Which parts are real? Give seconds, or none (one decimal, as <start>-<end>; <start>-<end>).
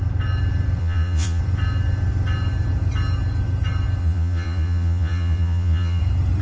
0.0-0.8; 1.4-4.0; 6.0-6.4